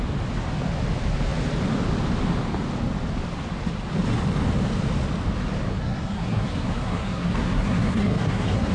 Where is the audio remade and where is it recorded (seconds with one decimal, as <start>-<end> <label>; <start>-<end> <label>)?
0.0-5.7 recorded; 5.7-8.7 remade

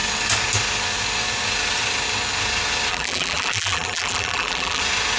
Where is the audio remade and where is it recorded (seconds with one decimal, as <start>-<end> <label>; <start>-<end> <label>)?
0.0-2.9 recorded; 2.9-4.8 remade; 4.8-5.2 recorded

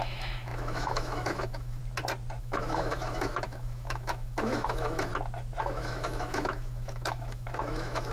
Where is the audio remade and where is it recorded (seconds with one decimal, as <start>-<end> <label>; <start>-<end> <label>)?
0.0-1.8 remade; 1.8-2.4 recorded; 2.4-5.1 remade; 5.1-5.6 recorded; 5.6-8.1 remade